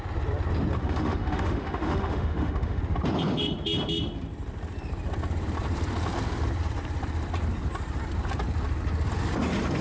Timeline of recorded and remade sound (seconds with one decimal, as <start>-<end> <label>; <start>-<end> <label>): 0.0-0.8 recorded; 0.8-2.8 remade; 2.8-9.8 recorded